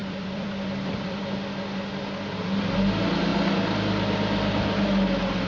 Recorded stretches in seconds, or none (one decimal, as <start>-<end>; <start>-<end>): 1.2-5.5